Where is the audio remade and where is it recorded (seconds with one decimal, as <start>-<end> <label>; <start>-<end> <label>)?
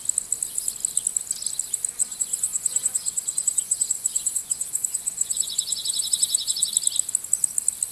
0.0-2.0 recorded; 2.0-6.7 remade; 6.7-7.9 recorded